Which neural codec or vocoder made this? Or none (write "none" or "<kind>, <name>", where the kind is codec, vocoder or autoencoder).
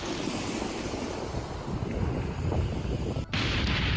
none